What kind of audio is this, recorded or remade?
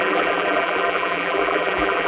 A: remade